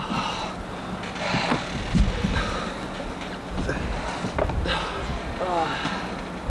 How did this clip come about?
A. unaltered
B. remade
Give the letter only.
A